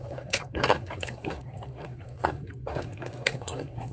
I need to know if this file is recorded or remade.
remade